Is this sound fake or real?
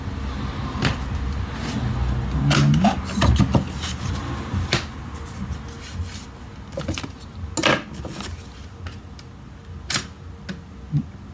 real